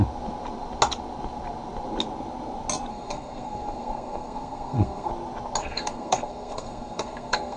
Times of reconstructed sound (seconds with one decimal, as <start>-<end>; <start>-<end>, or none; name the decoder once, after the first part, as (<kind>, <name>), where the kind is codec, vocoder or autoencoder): 2.9-5.1 (codec, SNAC); 5.6-7.6